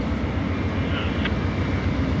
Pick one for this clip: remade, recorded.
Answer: recorded